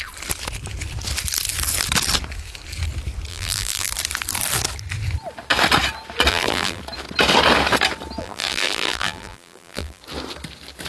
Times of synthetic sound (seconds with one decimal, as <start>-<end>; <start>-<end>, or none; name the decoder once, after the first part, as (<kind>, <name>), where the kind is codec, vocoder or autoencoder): 3.3-3.9 (vocoder, BigVGAN v2); 6.3-6.8; 8.2-10.0